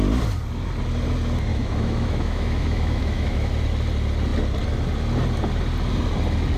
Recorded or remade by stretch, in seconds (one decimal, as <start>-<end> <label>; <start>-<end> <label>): 0.0-1.5 recorded; 1.5-3.5 remade; 3.5-6.6 recorded